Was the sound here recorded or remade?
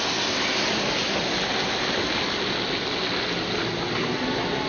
recorded